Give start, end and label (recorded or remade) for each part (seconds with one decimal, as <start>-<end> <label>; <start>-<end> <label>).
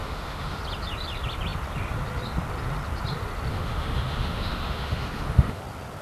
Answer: 0.0-0.6 remade; 0.6-3.5 recorded; 3.5-5.6 remade; 5.6-6.0 recorded